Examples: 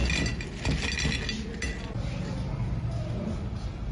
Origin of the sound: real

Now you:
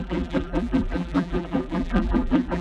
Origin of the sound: fake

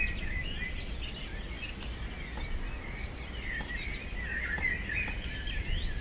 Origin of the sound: real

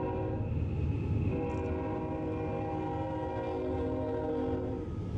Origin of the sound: real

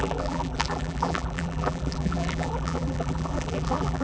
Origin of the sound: fake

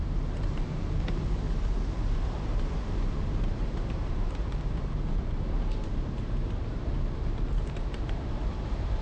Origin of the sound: fake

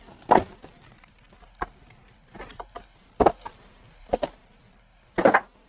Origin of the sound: real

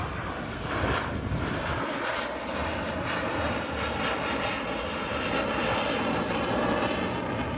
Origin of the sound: real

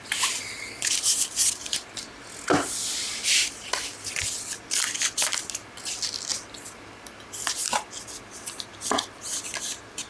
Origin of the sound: real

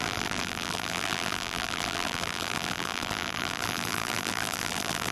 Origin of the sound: fake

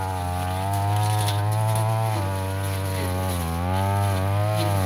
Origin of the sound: real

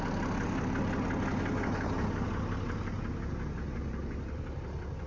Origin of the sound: real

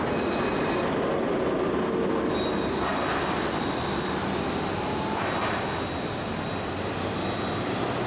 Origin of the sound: real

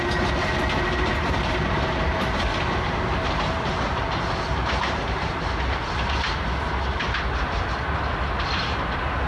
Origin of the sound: real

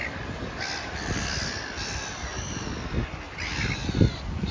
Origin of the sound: real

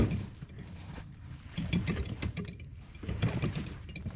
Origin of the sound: fake